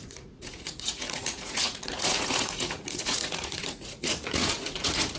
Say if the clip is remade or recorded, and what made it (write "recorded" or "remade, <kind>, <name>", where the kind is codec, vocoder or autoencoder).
remade, vocoder, Vocos